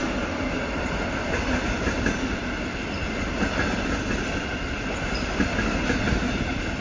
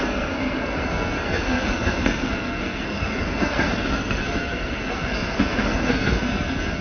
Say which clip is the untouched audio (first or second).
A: first